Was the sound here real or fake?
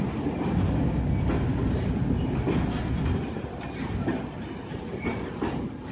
real